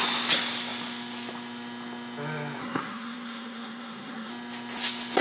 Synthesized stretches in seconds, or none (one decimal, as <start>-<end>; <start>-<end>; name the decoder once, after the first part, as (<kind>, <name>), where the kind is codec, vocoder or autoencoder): 2.6-4.3 (codec, SNAC)